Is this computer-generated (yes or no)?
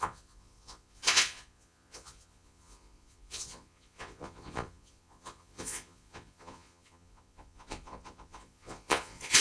yes